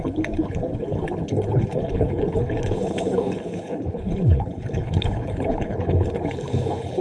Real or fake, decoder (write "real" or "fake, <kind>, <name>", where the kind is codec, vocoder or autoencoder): fake, codec, HILCodec